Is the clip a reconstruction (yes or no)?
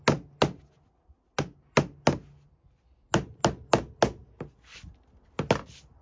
no